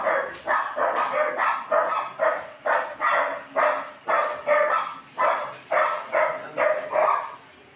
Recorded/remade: recorded